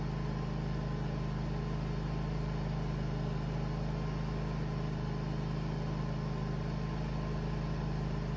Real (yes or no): yes